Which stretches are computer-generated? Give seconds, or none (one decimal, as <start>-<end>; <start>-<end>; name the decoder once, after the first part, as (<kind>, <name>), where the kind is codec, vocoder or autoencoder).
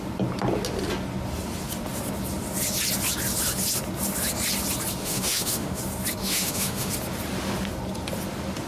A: 5.0-5.8 (autoencoder, DAC-VAE); 6.2-6.9